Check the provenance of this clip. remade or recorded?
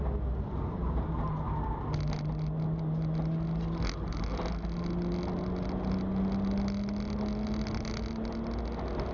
recorded